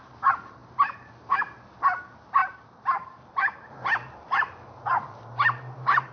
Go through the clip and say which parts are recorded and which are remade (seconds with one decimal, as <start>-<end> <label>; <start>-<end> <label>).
0.0-2.4 recorded; 2.4-3.7 remade; 3.7-6.1 recorded